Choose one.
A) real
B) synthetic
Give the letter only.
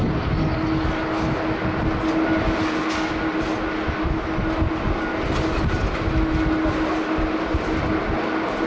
A